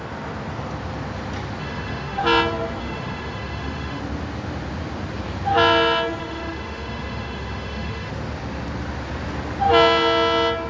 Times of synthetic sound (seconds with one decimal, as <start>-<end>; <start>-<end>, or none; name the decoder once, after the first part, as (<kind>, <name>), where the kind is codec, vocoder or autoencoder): 1.6-2.2 (autoencoder, DAC-VAE); 2.8-4.0; 6.2-8.1